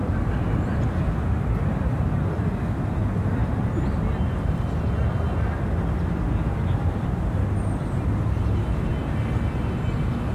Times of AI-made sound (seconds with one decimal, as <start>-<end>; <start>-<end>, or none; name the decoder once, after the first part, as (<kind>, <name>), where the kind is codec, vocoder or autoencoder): 3.4-5.1 (vocoder, BigVGAN v2)